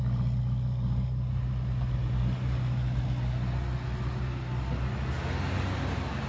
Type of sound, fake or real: real